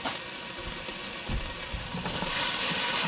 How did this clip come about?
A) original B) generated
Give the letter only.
A